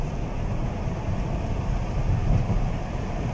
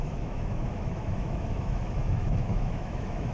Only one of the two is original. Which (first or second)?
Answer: first